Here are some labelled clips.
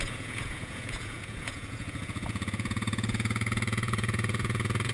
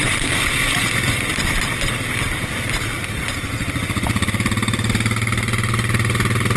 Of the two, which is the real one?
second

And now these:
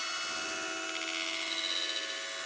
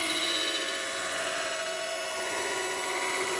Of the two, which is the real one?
first